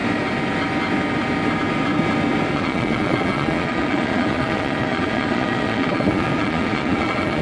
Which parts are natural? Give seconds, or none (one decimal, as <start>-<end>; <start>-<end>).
0.0-2.5